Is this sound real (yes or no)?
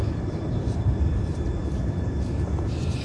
no